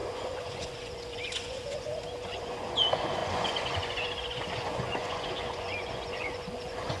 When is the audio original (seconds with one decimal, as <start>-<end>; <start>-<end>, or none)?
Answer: none